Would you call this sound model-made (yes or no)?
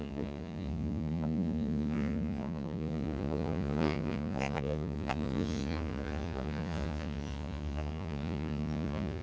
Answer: yes